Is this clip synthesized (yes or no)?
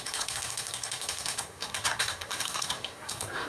yes